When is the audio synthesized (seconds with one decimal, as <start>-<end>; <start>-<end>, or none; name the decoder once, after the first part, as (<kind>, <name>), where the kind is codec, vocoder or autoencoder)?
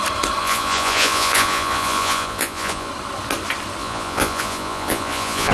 0.4-2.9 (vocoder, Vocos); 3.8-5.5